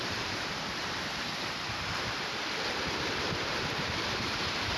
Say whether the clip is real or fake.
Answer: fake